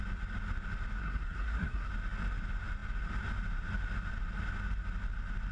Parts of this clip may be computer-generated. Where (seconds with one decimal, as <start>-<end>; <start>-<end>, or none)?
1.0-1.9